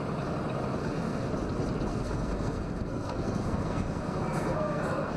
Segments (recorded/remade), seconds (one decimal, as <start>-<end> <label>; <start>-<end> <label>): 0.0-0.8 recorded; 0.8-1.3 remade; 1.3-1.9 recorded; 1.9-5.2 remade